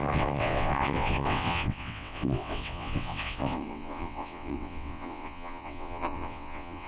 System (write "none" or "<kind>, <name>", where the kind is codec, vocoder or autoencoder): vocoder, WaveNeXt